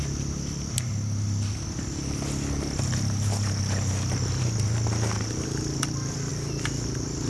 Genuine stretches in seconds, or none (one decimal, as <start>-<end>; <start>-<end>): 0.0-7.3